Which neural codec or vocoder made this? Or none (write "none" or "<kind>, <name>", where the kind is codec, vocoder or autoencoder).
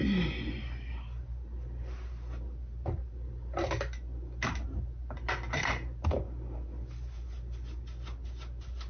none